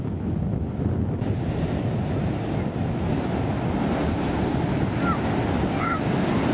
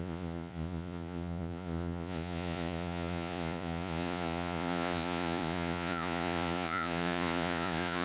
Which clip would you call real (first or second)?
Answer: first